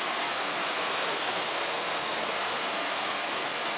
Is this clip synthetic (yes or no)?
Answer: yes